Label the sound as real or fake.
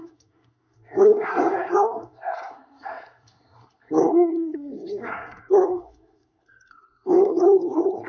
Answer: fake